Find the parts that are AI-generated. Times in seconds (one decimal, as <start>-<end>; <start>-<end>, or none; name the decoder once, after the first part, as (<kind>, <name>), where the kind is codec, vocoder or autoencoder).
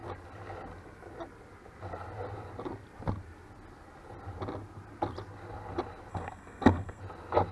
6.1-7.0 (codec, SNAC)